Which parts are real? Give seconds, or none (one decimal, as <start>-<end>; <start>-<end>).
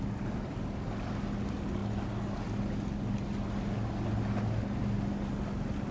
0.0-5.9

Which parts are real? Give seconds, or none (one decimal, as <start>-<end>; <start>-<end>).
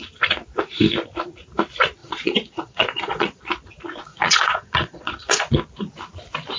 0.0-2.0; 3.4-4.1; 5.5-6.6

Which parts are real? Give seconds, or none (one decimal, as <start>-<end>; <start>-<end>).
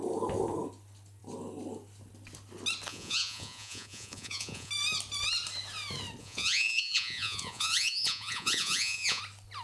0.0-2.9; 4.7-6.2; 9.2-9.6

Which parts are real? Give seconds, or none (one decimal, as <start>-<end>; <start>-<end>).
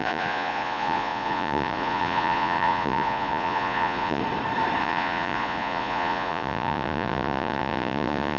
4.2-4.8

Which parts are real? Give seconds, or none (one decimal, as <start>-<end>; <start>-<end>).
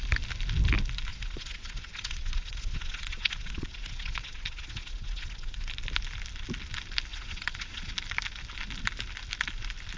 0.0-1.1; 5.7-7.1; 7.9-10.0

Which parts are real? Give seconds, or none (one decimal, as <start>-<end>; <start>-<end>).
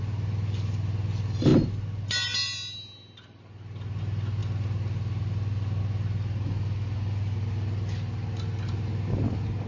0.0-9.7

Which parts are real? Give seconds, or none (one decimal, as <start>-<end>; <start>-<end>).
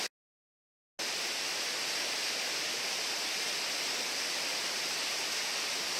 0.0-6.0